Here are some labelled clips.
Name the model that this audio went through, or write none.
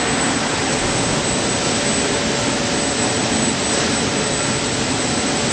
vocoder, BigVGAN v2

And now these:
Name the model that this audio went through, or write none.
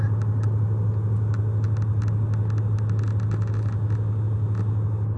none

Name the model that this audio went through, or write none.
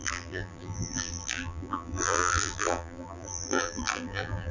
vocoder, BigVGAN v2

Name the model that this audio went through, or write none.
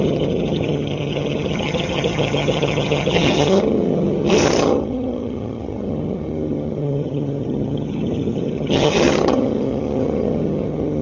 vocoder, HiFi-GAN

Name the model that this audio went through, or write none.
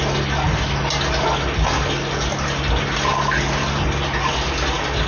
none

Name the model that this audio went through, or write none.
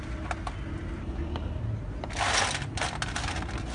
none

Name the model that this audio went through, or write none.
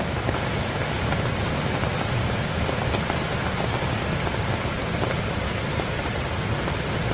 none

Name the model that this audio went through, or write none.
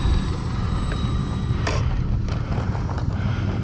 vocoder, BigVGAN v2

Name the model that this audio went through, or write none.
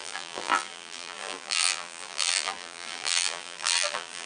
vocoder, BigVGAN v2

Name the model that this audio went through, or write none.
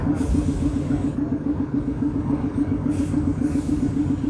codec, DAC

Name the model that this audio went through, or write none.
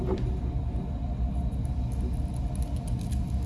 none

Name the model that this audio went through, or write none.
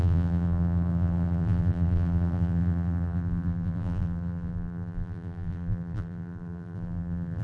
vocoder, BigVGAN v2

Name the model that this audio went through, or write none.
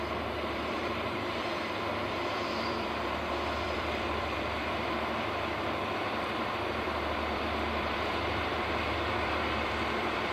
vocoder, BigVGAN v2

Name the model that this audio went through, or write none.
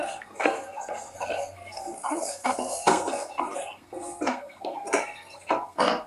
codec, SNAC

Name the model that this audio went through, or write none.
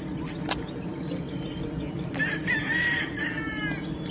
none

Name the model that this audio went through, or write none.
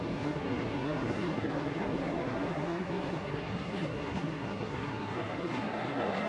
codec, SNAC